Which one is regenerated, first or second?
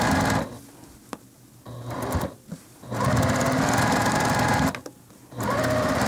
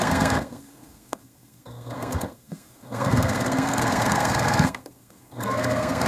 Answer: second